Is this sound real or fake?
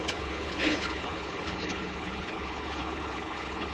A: fake